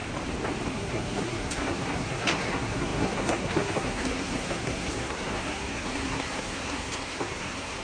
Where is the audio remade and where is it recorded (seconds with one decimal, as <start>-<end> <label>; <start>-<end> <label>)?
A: 0.0-0.7 recorded; 0.7-7.8 remade